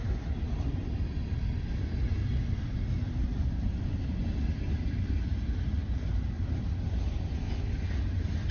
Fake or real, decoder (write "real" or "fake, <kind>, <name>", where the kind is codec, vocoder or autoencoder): real